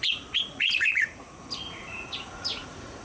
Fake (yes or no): yes